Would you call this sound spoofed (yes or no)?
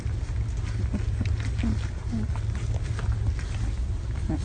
no